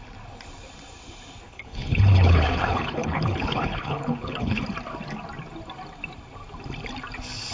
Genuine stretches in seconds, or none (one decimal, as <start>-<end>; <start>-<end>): 0.0-1.5; 4.6-7.5

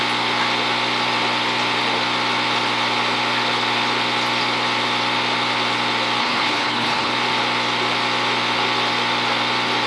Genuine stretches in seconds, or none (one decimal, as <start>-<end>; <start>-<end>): 0.0-6.2; 7.1-9.9